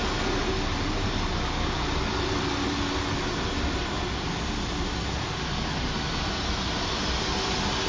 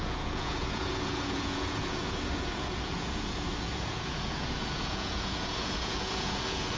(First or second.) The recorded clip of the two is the first